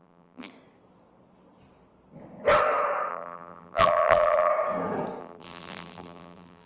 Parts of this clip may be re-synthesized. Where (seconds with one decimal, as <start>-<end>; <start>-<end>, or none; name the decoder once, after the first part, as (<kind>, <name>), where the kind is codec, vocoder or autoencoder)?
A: 0.0-0.5 (vocoder, BigVGAN v2); 3.1-4.5; 5.2-6.7